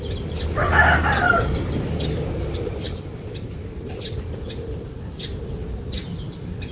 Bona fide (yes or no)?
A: yes